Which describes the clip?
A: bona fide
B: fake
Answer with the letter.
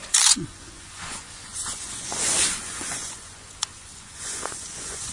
B